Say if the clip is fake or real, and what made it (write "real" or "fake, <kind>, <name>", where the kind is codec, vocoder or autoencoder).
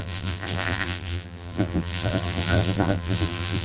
fake, vocoder, BigVGAN v2